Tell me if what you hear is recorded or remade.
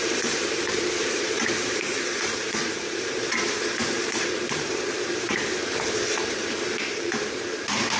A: remade